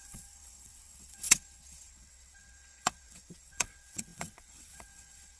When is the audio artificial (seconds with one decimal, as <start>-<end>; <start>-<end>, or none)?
0.0-5.4